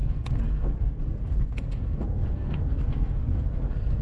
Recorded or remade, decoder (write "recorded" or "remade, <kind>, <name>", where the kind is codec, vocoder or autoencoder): remade, codec, SNAC